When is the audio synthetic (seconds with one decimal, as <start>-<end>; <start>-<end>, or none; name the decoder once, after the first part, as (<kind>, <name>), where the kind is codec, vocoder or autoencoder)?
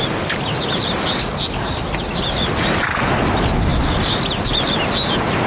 none